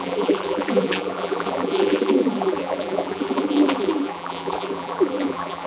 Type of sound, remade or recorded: remade